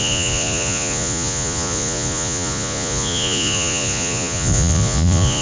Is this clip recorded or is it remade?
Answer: remade